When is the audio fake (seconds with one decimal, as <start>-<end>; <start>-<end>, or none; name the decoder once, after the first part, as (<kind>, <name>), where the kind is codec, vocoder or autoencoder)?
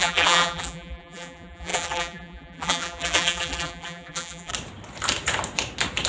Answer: 0.0-4.5 (vocoder, BigVGAN v2)